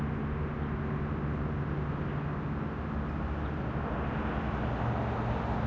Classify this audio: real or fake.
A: real